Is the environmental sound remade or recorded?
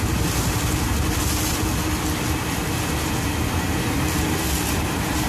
recorded